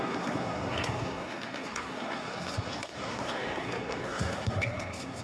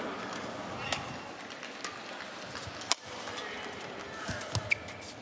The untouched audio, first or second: second